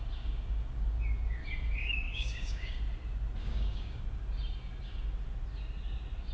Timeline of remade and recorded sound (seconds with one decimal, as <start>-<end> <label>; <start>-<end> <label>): 0.0-1.8 recorded; 1.8-2.8 remade; 2.8-3.4 recorded; 3.4-4.0 remade; 4.0-6.3 recorded